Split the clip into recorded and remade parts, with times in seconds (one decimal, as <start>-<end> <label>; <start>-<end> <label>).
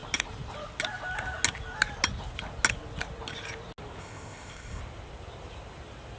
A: 0.0-4.0 recorded; 4.0-4.8 remade; 4.8-6.2 recorded